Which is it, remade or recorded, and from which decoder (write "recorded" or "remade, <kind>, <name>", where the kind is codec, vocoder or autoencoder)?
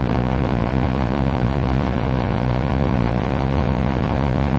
remade, vocoder, Vocos